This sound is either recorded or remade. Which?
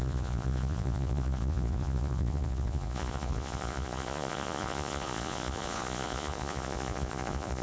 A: remade